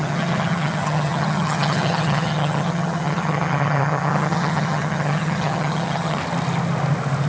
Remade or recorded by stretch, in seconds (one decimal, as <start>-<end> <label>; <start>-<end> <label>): 0.0-6.2 remade; 6.2-7.3 recorded